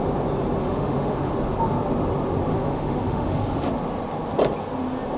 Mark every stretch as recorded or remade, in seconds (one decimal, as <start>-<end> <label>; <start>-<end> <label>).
0.0-0.6 recorded; 0.6-1.3 remade; 1.3-2.5 recorded; 2.5-3.7 remade; 3.7-5.2 recorded